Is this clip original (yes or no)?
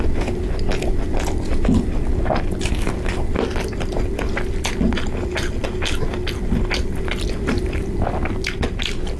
yes